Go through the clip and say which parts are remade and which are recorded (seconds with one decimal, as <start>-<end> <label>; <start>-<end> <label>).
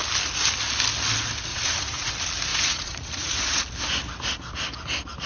0.0-1.5 recorded; 1.5-2.1 remade; 2.1-2.5 recorded; 2.5-3.6 remade; 3.6-5.3 recorded